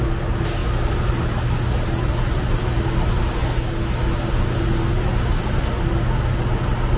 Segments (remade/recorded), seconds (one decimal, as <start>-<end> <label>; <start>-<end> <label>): 0.0-7.0 recorded